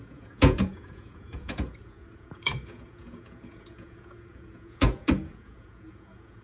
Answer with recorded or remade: remade